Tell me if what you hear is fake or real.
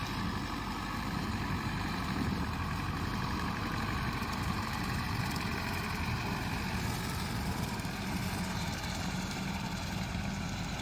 fake